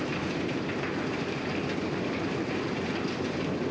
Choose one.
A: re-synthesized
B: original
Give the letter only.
B